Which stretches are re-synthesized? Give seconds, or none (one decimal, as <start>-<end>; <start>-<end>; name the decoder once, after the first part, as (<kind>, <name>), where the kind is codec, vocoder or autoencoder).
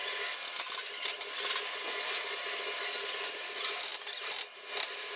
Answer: 3.1-5.2 (vocoder, BigVGAN v2)